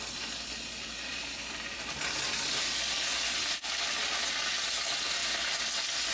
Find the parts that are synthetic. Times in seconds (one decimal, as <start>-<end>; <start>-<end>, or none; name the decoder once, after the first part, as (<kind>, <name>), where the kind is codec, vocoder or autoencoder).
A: 1.1-2.0 (vocoder, BigVGAN v2); 3.1-4.1